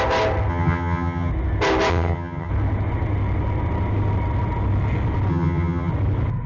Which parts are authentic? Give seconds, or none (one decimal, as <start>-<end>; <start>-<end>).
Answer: 0.0-0.5; 1.3-1.9; 2.5-5.3; 5.9-6.5